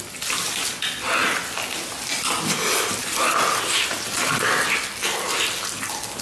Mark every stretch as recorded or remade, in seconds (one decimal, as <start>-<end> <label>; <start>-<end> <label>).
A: 0.0-6.2 recorded